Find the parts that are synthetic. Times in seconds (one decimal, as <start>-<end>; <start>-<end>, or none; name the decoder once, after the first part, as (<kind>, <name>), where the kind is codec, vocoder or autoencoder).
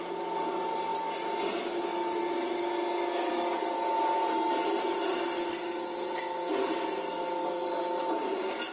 none